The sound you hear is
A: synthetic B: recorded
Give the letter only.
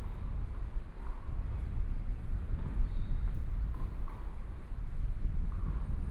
B